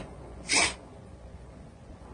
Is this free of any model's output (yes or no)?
no